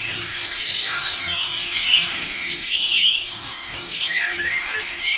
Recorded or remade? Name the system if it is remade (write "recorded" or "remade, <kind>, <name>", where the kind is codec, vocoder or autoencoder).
remade, codec, DAC